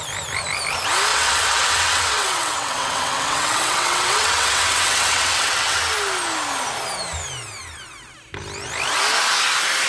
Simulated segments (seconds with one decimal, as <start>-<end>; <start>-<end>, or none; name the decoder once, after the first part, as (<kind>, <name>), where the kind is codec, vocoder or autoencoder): 1.1-5.8 (vocoder, WaveNeXt)